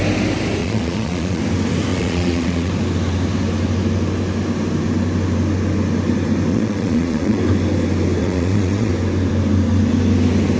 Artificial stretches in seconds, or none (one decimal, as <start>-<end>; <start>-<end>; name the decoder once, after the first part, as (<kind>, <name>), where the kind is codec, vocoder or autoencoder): 0.6-1.4 (vocoder, Vocos); 1.9-2.7; 6.5-7.4; 8.2-8.9